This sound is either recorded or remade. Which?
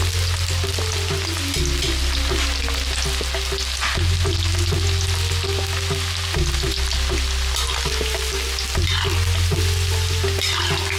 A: recorded